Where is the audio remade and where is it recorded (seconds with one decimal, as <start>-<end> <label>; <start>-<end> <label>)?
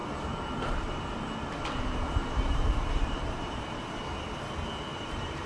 0.0-1.1 remade; 1.1-2.2 recorded; 2.2-3.7 remade; 3.7-4.9 recorded; 4.9-5.5 remade